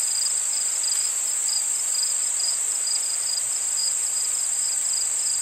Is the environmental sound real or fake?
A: real